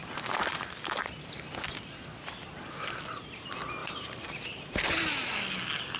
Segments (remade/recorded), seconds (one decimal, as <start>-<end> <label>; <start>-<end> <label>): 0.0-0.5 recorded; 0.5-1.5 remade; 1.5-3.8 recorded; 3.8-4.9 remade; 4.9-6.0 recorded